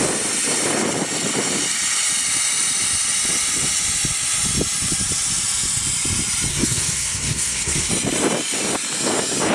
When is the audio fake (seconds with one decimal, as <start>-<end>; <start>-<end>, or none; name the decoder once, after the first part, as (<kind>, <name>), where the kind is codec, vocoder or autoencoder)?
6.5-7.9 (codec, SNAC)